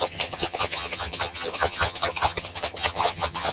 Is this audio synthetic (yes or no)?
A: yes